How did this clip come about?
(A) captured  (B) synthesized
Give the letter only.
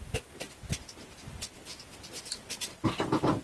A